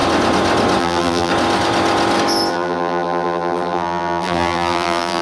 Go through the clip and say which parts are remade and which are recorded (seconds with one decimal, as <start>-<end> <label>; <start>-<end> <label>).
0.0-0.8 recorded; 0.8-1.3 remade; 1.3-2.5 recorded; 2.5-5.2 remade